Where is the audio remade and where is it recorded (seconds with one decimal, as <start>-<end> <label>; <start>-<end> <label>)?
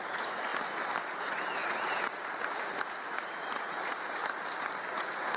0.0-0.5 remade; 0.5-1.1 recorded; 1.1-4.2 remade; 4.2-4.9 recorded; 4.9-5.4 remade